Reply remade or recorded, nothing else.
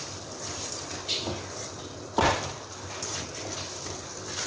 recorded